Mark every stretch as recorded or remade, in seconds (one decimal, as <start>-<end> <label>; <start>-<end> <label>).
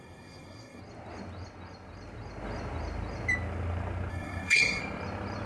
0.0-0.8 remade; 0.8-4.1 recorded; 4.1-4.8 remade; 4.8-5.5 recorded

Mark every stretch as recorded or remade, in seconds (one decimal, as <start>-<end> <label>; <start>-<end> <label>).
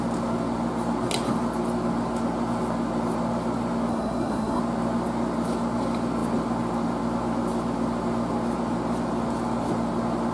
0.0-3.9 recorded; 3.9-4.6 remade; 4.6-10.3 recorded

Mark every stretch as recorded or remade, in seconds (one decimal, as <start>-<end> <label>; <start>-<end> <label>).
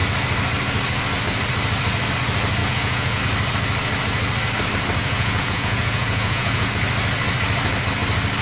0.0-2.6 recorded; 2.6-3.2 remade; 3.2-5.0 recorded; 5.0-6.7 remade; 6.7-8.4 recorded